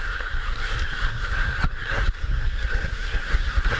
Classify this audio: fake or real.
fake